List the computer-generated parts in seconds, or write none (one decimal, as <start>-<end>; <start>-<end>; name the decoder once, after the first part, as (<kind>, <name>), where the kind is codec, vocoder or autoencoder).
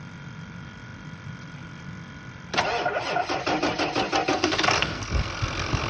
4.3-5.9 (codec, SNAC)